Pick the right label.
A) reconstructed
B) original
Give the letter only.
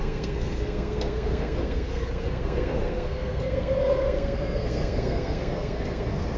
A